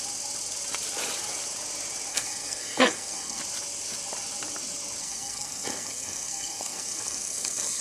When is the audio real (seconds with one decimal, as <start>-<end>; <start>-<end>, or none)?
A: 0.0-2.1; 3.4-5.0